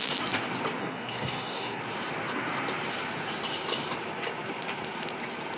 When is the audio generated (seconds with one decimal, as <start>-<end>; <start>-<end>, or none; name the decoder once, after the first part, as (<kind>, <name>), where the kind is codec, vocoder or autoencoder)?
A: 0.8-1.8 (codec, SNAC)